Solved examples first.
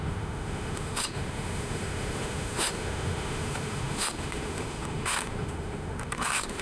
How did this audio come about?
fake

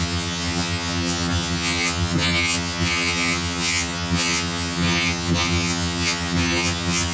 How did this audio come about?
fake